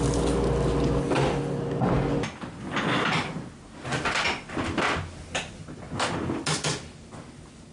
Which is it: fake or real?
real